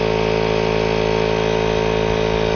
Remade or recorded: recorded